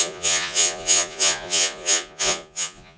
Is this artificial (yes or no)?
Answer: yes